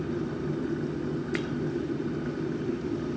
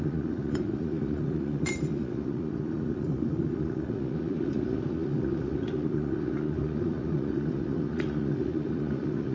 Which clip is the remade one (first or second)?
second